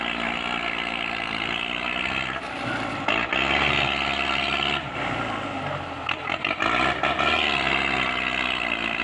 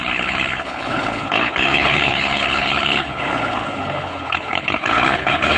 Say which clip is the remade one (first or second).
second